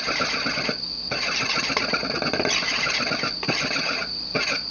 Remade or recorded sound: remade